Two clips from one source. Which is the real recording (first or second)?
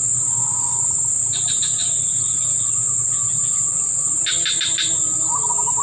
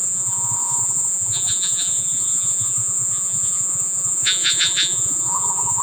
first